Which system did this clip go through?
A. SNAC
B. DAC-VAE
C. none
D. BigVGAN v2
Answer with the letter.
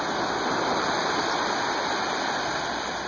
D